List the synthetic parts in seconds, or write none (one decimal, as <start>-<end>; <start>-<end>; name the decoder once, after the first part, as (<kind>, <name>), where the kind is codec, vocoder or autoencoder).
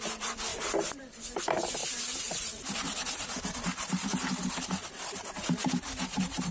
none